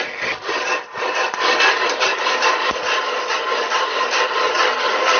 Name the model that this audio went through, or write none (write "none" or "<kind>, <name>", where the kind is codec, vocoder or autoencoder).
vocoder, BigVGAN v2